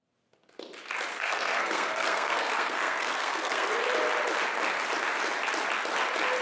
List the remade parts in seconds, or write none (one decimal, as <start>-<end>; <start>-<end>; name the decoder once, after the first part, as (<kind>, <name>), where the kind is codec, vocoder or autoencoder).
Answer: 1.1-3.7 (codec, SNAC)